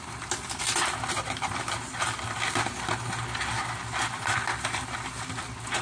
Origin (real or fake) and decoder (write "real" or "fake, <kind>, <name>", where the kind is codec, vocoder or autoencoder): real